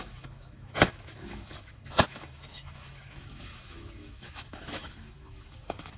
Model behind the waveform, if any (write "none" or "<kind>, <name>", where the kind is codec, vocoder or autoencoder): autoencoder, DAC-VAE